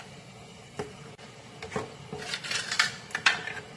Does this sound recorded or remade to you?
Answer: recorded